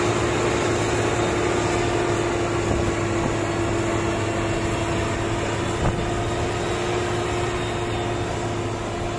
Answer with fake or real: real